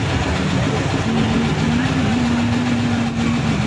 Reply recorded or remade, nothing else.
recorded